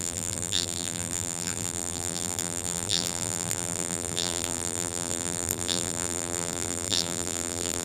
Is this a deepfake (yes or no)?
yes